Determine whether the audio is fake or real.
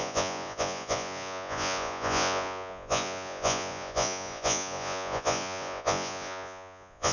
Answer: fake